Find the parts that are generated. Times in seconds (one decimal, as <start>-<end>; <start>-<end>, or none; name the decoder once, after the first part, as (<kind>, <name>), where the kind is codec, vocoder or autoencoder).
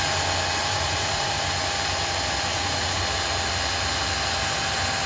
0.6-1.3 (vocoder, Vocos); 2.5-3.0